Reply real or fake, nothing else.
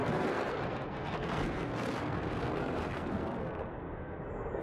fake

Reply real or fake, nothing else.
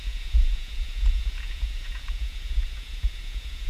fake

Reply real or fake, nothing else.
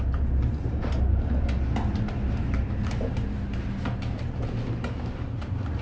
real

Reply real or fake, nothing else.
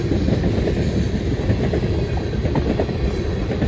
fake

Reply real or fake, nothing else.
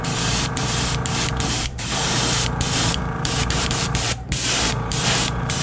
fake